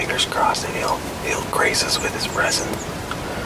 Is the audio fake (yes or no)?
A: no